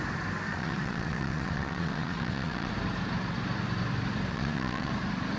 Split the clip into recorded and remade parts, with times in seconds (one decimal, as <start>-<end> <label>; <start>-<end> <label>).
0.0-0.5 recorded; 0.5-2.7 remade; 2.7-4.3 recorded; 4.3-4.9 remade; 4.9-5.4 recorded